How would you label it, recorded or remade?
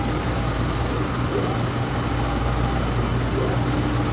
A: recorded